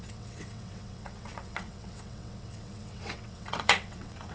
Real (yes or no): no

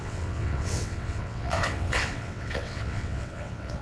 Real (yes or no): no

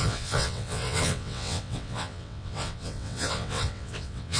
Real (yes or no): no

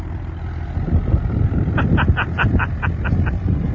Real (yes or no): yes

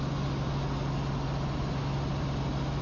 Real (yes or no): yes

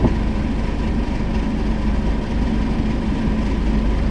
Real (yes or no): yes